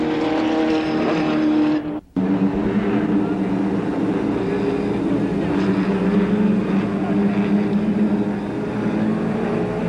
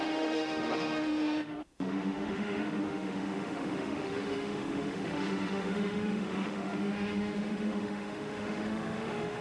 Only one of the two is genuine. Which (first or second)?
first